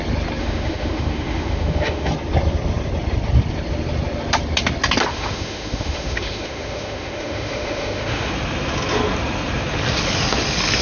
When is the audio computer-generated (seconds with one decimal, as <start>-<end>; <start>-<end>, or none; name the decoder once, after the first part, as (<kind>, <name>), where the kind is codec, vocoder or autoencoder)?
0.4-2.1 (autoencoder, DAC-VAE); 5.1-8.3